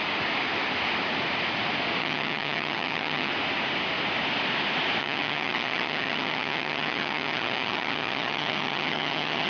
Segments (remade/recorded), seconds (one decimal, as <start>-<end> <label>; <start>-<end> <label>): 0.0-2.0 recorded; 2.0-3.3 remade; 3.3-5.0 recorded; 5.0-9.5 remade